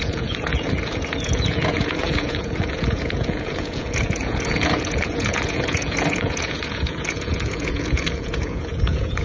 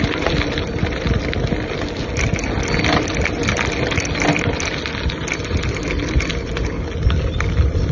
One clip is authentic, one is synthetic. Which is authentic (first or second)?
second